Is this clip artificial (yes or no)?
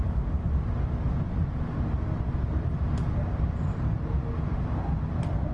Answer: no